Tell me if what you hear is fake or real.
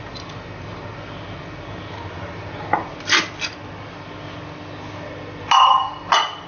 real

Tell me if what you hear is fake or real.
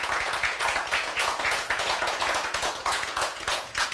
fake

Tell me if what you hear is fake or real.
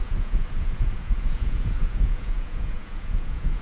fake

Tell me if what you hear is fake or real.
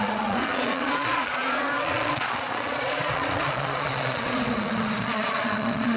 fake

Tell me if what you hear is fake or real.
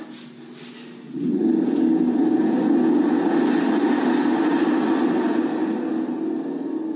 real